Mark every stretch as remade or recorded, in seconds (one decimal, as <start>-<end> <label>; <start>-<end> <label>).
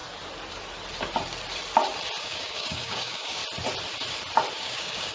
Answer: 0.0-2.2 recorded; 2.2-3.4 remade; 3.4-4.5 recorded; 4.5-5.1 remade